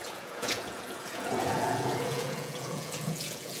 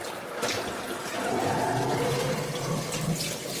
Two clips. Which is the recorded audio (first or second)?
second